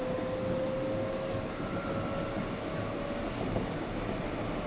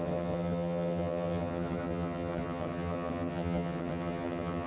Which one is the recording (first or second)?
first